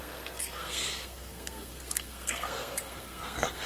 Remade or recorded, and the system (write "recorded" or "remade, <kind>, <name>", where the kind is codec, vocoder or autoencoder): remade, codec, SNAC